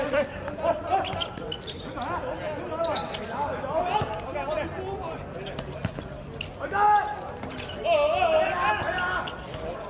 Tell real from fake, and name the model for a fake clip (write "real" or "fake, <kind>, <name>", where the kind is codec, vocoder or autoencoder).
real